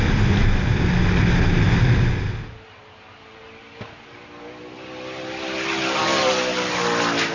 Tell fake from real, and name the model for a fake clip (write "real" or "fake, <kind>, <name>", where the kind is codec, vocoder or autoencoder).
real